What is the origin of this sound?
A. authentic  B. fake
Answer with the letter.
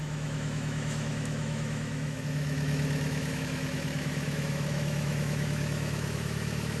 B